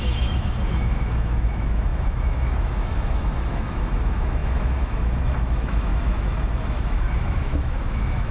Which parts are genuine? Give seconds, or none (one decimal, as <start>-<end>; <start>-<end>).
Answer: none